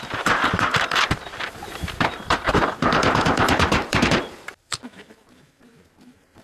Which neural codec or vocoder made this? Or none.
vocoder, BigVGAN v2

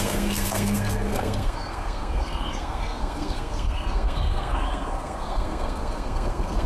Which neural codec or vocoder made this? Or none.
codec, SNAC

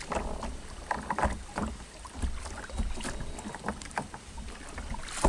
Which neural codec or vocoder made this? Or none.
none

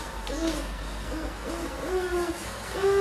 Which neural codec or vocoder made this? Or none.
codec, SNAC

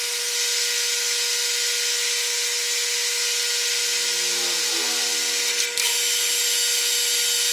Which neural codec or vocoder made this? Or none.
none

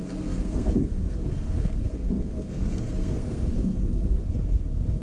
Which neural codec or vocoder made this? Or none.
codec, SNAC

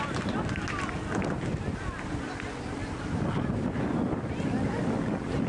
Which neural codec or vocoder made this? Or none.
none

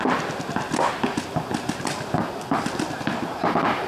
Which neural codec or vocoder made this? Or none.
none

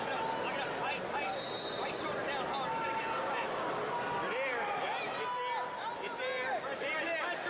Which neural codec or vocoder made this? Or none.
none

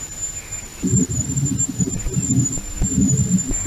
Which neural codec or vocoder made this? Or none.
none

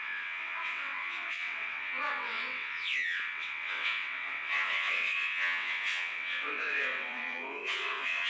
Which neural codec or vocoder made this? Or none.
vocoder, WaveNeXt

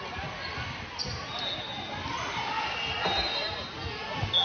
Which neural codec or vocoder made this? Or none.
none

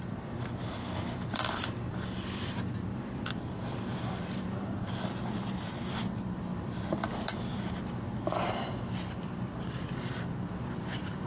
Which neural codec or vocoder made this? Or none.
vocoder, BigVGAN v2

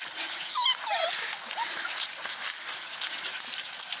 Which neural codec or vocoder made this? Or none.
none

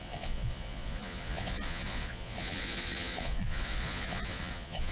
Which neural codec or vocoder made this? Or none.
vocoder, Vocos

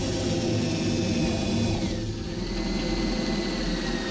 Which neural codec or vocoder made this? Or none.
none